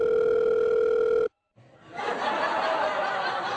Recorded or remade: recorded